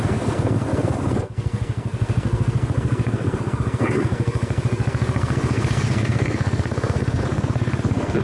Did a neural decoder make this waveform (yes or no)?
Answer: yes